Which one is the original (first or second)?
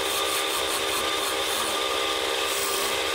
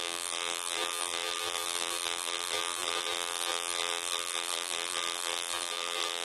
first